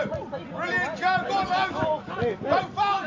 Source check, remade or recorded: recorded